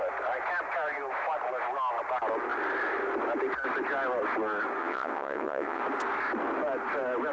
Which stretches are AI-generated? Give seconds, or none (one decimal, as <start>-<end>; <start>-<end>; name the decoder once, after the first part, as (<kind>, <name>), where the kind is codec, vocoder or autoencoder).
4.8-5.8 (vocoder, WaveNeXt)